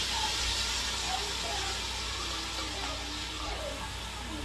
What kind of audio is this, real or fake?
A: real